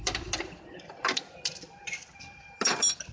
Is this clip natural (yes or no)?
no